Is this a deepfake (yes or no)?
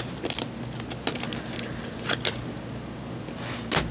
no